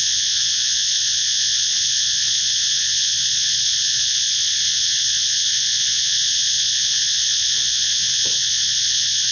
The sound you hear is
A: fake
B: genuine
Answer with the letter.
A